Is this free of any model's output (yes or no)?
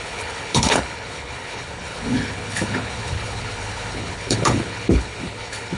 no